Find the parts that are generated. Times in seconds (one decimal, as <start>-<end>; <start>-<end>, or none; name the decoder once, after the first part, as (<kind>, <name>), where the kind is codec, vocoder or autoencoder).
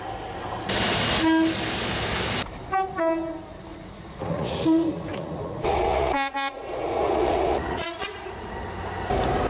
3.7-8.5 (vocoder, Vocos)